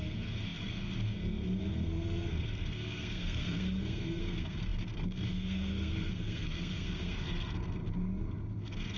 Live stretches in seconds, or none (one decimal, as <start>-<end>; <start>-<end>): 7.8-8.6

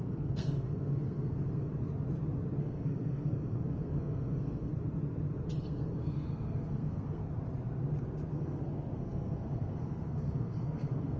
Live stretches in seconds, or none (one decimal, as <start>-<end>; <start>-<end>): 1.7-2.6; 4.7-5.6; 7.2-8.3

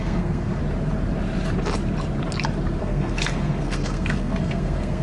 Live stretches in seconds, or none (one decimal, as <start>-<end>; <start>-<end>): 0.6-2.8

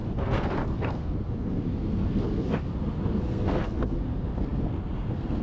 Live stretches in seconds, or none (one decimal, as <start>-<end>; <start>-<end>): none

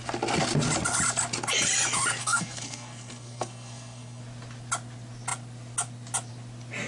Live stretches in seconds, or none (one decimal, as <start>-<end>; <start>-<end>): 0.0-2.2; 4.2-6.9